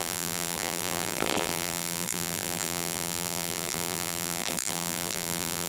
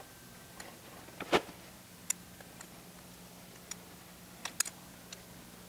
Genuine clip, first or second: second